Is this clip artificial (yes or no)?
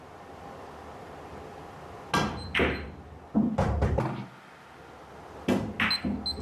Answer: no